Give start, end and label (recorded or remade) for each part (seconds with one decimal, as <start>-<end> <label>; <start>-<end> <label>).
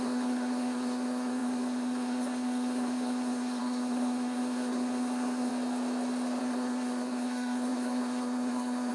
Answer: 0.0-5.5 remade; 5.5-6.4 recorded; 6.4-8.9 remade